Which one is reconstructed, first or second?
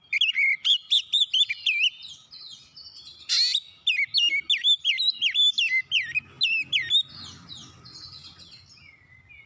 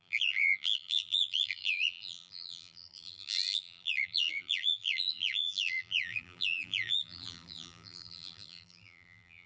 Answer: second